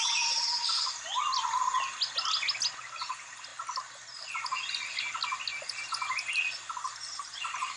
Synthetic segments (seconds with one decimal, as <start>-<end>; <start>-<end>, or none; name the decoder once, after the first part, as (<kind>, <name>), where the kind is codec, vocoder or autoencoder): none

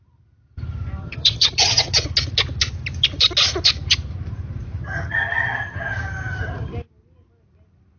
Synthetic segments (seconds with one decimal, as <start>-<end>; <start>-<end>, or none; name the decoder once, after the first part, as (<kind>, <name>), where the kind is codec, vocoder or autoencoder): 1.0-1.9 (vocoder, HiFi-GAN); 4.8-6.7

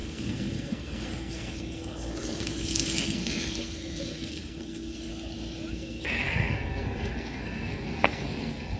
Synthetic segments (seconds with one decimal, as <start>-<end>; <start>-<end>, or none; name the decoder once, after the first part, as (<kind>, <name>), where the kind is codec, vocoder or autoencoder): 0.0-5.1 (codec, SNAC); 5.7-8.8

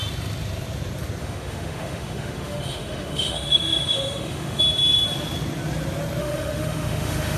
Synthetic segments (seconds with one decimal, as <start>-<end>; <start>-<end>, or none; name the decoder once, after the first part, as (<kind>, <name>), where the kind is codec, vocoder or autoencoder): 1.2-4.6 (autoencoder, DAC-VAE); 6.2-7.4

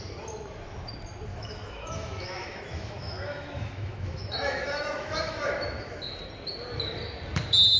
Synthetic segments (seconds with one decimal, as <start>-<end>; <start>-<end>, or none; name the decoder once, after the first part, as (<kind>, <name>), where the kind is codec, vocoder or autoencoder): 1.3-6.0 (autoencoder, DAC-VAE)

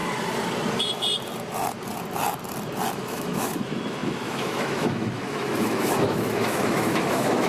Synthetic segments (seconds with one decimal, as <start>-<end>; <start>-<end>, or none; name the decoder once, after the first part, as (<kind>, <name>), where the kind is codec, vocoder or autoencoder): 2.9-7.5 (autoencoder, DAC-VAE)

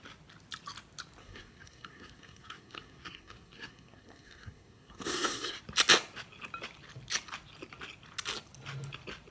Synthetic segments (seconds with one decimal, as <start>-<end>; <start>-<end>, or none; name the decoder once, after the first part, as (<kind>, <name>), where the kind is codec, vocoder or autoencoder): 1.2-5.6 (codec, SNAC)